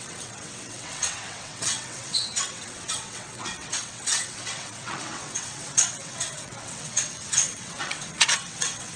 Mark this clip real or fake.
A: fake